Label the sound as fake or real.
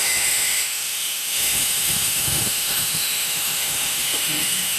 fake